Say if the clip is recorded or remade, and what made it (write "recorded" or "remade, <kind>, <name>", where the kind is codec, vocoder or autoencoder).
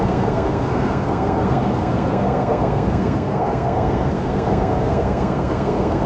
remade, codec, SNAC